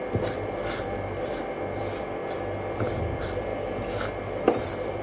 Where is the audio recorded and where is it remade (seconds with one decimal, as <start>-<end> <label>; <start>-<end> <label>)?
0.0-2.2 remade; 2.2-2.9 recorded; 2.9-3.5 remade; 3.5-4.6 recorded; 4.6-5.0 remade